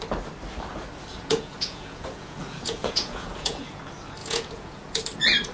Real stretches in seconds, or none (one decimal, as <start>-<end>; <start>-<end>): 0.0-1.1; 3.8-4.2; 5.0-5.5